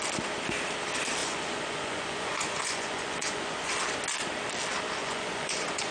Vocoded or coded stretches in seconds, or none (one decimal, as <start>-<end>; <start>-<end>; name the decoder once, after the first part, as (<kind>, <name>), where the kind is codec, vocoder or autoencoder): 1.2-3.7 (vocoder, Vocos); 5.0-5.9